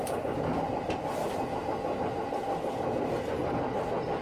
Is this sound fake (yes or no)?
no